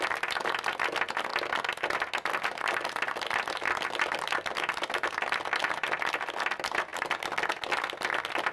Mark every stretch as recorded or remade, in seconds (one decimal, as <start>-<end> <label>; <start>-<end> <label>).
0.0-8.5 recorded